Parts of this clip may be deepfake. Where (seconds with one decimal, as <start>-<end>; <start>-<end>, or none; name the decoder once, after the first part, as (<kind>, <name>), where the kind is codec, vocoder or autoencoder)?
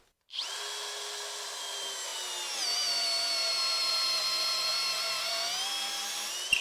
none